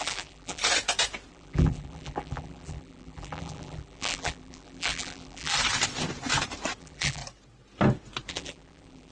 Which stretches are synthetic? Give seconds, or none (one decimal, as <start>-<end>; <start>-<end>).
0.0-0.6; 1.3-5.5; 6.8-7.2; 8.3-9.1